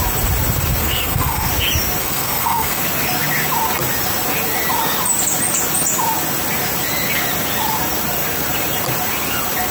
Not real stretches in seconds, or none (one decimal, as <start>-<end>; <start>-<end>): 0.8-1.5; 2.0-2.8